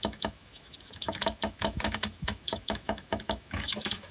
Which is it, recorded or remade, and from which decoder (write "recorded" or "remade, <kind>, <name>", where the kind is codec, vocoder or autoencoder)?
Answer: remade, autoencoder, DAC-VAE